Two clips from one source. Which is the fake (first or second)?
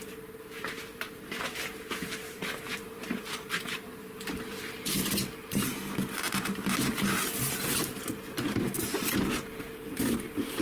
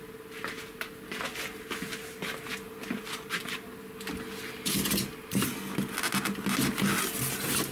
first